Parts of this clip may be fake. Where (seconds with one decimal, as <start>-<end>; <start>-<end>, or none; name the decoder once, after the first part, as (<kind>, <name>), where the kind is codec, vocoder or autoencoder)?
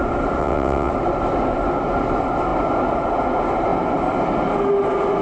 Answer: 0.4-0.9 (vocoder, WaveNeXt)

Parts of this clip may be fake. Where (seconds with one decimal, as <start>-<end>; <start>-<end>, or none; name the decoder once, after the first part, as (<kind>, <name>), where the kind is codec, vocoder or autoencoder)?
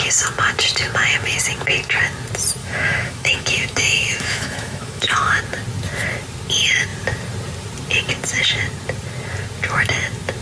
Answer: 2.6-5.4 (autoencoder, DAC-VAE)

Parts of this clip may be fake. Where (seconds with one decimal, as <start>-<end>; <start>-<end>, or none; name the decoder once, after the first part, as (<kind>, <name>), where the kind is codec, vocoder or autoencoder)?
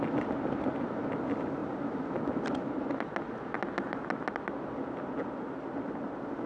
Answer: none